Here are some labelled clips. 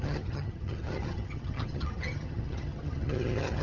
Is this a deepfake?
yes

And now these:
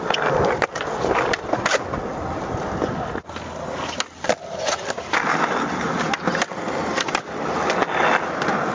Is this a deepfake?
no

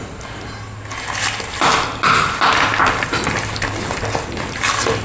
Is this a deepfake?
no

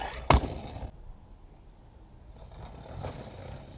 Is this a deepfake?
no